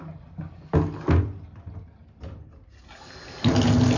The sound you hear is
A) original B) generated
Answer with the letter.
A